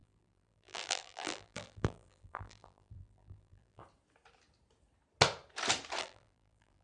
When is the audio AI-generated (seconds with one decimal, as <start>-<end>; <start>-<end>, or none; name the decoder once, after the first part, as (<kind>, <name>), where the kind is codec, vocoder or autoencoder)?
0.0-3.8 (vocoder, BigVGAN v2); 6.0-6.8